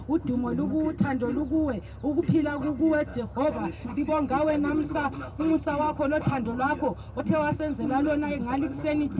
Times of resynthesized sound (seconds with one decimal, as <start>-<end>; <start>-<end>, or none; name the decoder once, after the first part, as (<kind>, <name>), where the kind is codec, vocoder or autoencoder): 3.1-7.2 (vocoder, BigVGAN v2)